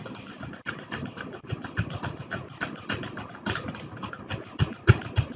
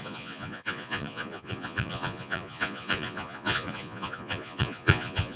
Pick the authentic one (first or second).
first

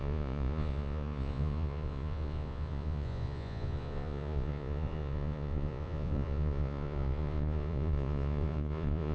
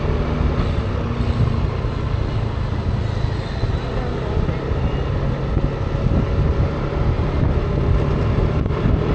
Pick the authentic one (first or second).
second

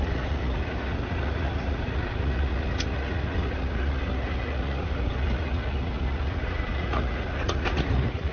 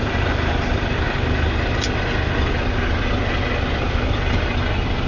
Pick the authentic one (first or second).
second